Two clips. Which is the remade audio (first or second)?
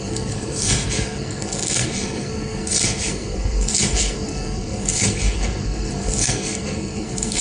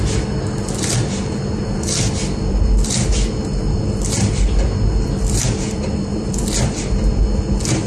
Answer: first